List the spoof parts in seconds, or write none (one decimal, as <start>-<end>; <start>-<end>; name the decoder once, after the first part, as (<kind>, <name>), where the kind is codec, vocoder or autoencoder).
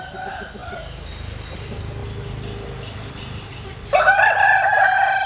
none